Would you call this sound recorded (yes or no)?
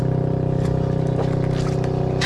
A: yes